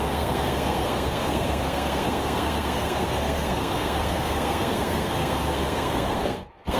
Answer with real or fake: fake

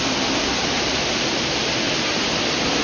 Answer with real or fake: real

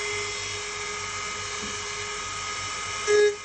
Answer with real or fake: real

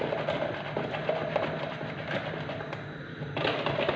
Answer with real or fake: real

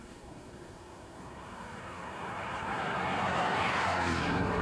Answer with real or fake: fake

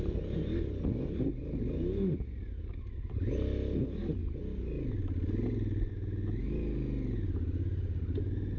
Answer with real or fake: real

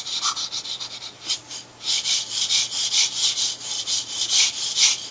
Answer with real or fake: real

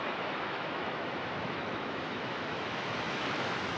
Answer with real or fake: fake